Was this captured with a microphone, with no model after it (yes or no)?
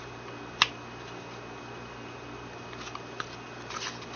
yes